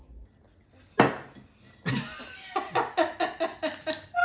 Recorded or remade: recorded